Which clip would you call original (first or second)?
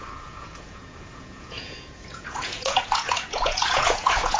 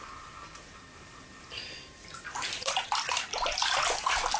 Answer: second